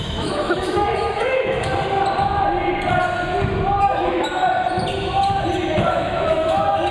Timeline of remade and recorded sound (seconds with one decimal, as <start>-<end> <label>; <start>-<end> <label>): 0.0-1.7 remade; 1.7-3.8 recorded; 3.8-4.4 remade; 4.4-5.9 recorded; 5.9-6.9 remade